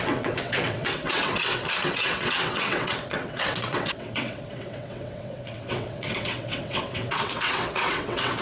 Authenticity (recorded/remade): remade